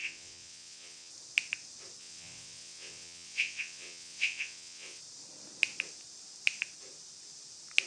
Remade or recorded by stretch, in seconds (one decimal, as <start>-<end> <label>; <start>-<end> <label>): 0.0-1.1 remade; 1.1-2.0 recorded; 2.0-5.0 remade; 5.0-7.9 recorded